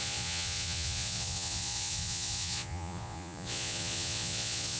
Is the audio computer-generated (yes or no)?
yes